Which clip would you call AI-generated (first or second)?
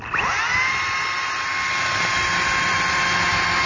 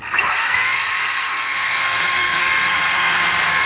second